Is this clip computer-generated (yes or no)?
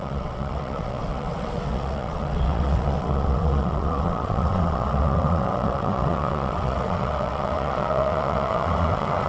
yes